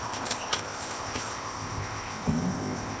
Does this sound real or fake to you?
fake